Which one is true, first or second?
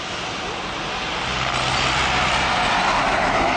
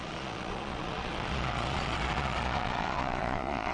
first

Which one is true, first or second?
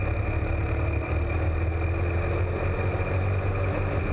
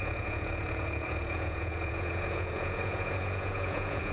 first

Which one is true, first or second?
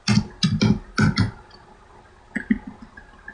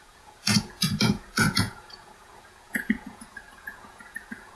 first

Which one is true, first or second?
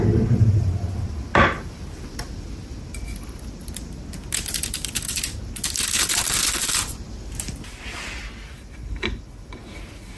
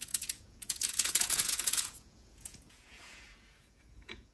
first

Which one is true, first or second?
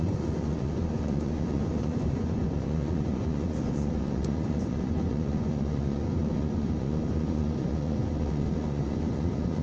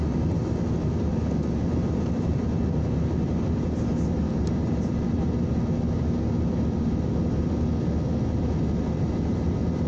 second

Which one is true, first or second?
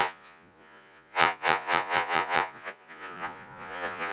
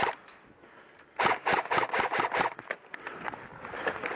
second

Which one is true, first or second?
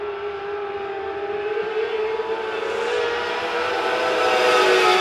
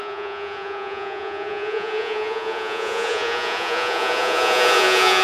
first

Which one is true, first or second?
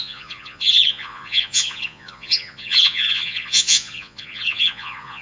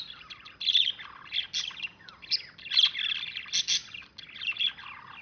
second